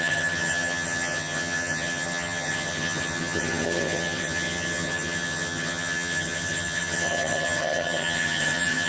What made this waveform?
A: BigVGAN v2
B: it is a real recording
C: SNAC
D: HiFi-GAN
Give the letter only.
D